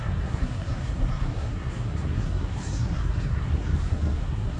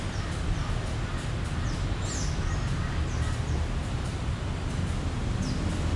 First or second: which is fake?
first